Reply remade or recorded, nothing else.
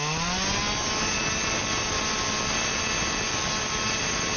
recorded